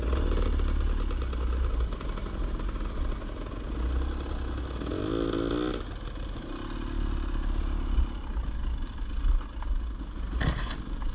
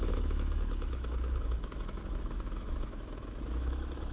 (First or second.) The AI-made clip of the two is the second